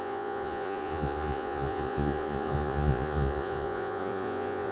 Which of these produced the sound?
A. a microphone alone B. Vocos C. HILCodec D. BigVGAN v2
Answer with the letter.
B